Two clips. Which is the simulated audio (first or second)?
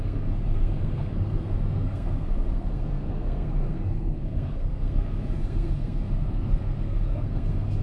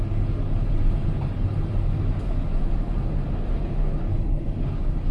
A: first